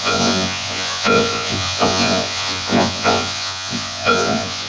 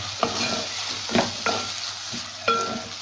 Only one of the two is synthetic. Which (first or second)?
first